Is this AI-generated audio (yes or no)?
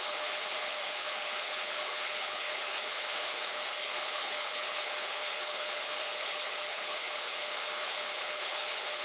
yes